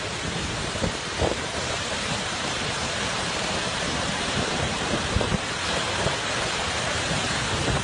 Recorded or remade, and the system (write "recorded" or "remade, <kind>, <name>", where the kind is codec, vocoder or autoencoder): remade, vocoder, BigVGAN v2